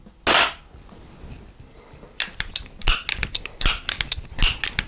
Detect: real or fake real